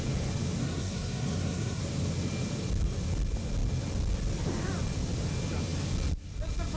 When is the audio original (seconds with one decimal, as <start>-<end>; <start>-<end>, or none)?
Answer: 0.0-0.6; 1.8-6.8